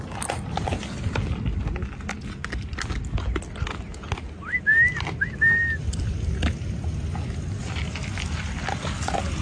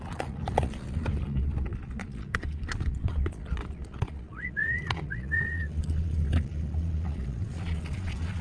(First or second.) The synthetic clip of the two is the second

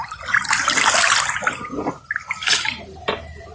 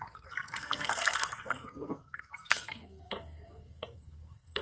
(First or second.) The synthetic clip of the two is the second